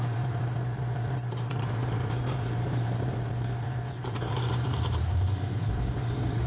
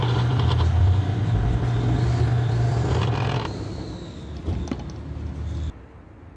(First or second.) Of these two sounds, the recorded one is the second